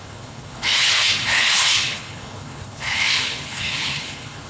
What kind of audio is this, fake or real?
fake